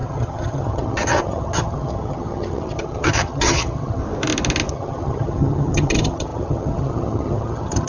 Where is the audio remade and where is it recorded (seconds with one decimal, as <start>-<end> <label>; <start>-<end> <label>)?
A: 0.0-4.0 remade; 4.0-4.7 recorded; 4.7-7.9 remade